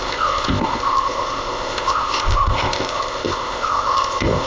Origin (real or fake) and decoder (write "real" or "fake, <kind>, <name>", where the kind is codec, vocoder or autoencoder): fake, codec, ZipCodec